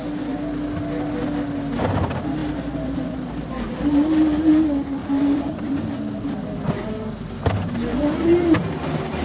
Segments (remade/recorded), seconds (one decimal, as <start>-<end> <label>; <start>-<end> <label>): 0.0-2.4 recorded; 2.4-4.5 remade; 4.5-5.0 recorded; 5.0-5.7 remade; 5.7-7.9 recorded; 7.9-8.7 remade; 8.7-9.2 recorded